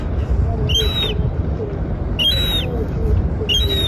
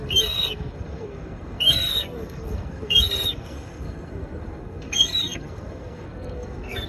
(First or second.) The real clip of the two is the first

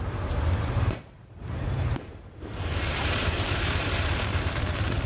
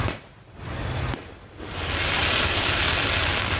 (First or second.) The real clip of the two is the second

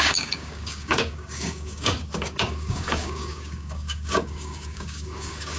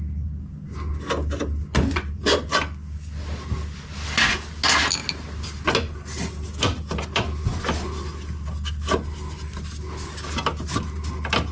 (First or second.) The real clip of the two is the second